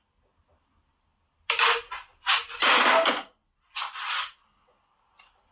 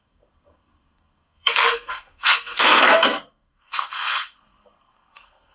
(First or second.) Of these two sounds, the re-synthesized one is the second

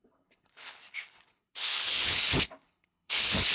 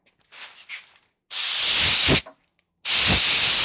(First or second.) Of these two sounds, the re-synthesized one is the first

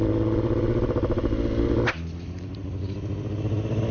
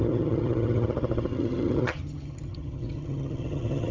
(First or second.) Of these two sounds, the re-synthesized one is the second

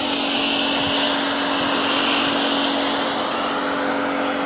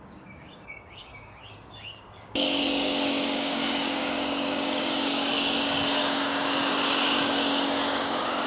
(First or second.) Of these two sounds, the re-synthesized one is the second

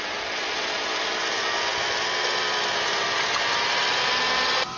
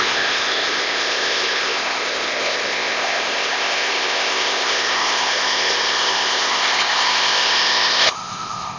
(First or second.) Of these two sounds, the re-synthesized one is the second